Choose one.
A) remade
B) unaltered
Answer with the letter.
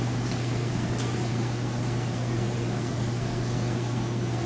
A